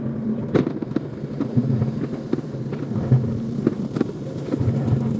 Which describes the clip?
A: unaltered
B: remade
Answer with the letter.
B